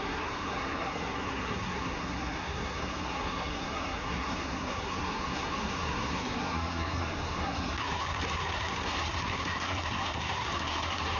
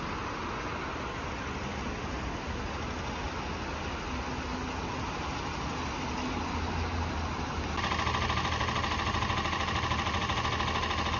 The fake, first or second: first